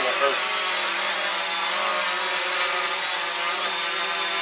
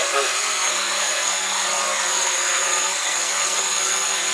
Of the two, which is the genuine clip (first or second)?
first